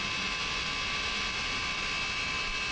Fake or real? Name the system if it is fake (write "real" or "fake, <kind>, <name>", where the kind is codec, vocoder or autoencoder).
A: real